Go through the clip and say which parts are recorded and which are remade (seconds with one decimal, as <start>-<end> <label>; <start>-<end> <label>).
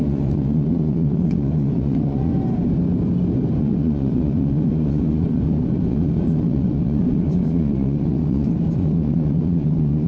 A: 0.0-2.3 remade; 2.3-3.6 recorded; 3.6-10.1 remade